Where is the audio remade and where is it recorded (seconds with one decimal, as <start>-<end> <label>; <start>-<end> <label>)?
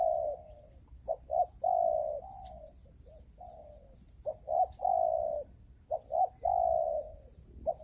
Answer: 0.0-7.8 recorded